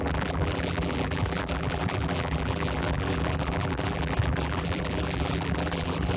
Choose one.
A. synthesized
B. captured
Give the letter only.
A